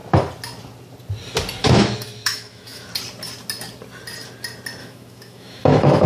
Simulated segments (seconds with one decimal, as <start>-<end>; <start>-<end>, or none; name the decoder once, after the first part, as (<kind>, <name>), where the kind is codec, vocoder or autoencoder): 1.6-2.9 (autoencoder, DAC-VAE); 4.8-6.1